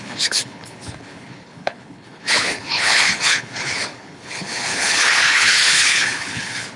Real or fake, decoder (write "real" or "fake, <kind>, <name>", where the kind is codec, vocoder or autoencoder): fake, codec, HILCodec